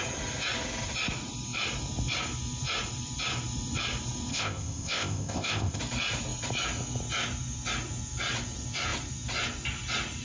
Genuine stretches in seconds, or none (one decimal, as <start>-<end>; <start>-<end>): 0.0-4.3; 5.8-10.2